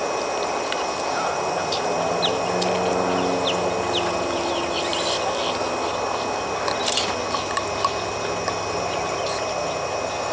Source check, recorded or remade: recorded